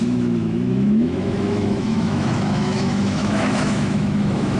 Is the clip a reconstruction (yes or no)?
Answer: yes